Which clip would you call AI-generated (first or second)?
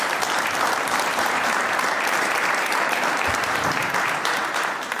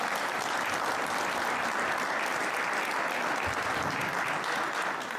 first